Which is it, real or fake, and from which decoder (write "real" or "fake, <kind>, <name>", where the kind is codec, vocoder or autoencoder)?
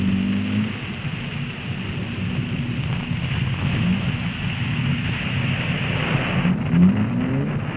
real